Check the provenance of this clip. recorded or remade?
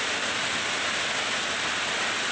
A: recorded